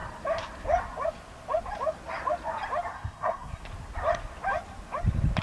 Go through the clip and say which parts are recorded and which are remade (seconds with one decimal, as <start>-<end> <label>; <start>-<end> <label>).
0.0-2.9 recorded; 2.9-3.6 remade; 3.6-5.4 recorded